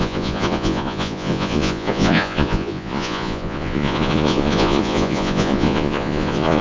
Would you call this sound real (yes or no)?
no